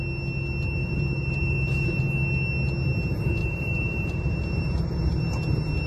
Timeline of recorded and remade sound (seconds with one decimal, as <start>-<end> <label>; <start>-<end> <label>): 0.0-0.8 recorded; 0.8-2.0 remade; 2.0-3.4 recorded; 3.4-5.2 remade; 5.2-5.9 recorded